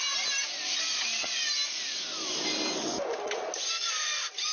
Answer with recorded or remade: recorded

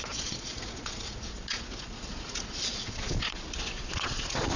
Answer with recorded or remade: remade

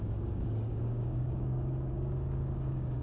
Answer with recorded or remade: remade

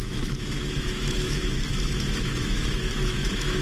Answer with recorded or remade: remade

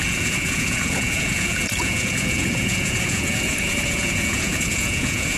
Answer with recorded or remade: remade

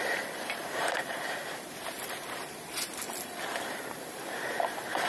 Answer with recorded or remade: remade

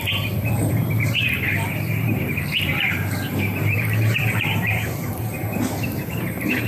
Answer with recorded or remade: remade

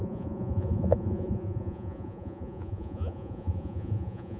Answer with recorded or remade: remade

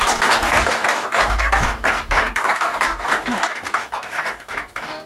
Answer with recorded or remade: remade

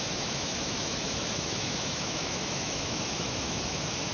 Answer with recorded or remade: remade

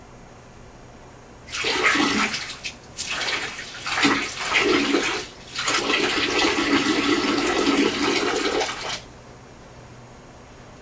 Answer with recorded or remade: recorded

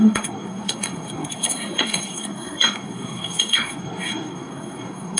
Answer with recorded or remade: remade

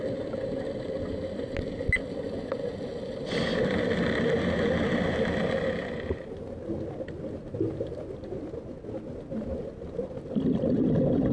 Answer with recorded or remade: recorded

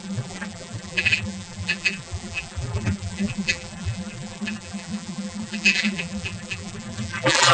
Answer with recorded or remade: remade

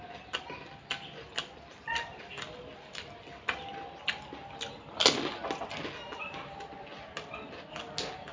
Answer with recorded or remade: recorded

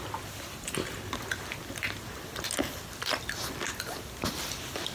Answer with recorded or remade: recorded